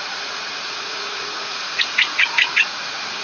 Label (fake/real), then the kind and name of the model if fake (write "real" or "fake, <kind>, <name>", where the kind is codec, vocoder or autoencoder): fake, vocoder, Vocos